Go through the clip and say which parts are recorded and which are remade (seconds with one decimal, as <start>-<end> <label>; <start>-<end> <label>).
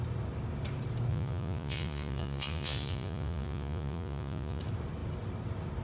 0.0-1.1 recorded; 1.1-4.6 remade; 4.6-5.8 recorded